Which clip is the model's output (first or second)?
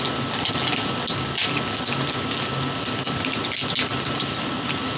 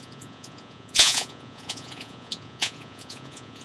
second